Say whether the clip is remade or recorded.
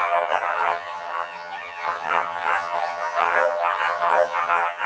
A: remade